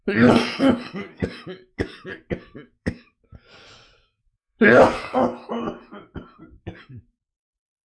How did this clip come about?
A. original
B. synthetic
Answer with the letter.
B